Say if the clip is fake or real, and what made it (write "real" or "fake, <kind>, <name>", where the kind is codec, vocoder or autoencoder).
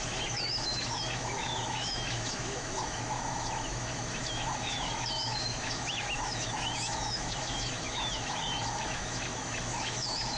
fake, autoencoder, DAC-VAE